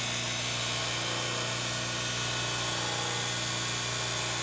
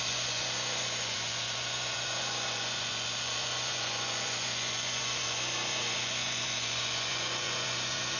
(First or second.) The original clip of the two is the first